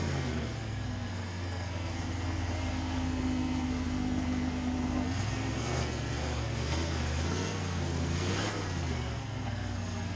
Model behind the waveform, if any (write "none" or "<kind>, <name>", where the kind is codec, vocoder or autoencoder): codec, SNAC